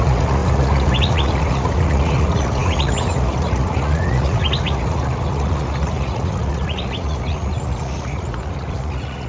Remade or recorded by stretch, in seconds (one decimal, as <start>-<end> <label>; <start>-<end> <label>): 0.0-9.3 remade